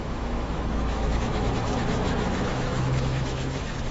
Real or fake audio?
fake